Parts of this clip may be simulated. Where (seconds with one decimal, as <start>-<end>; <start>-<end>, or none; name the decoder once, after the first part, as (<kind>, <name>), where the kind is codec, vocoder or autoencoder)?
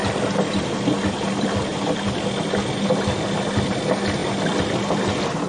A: none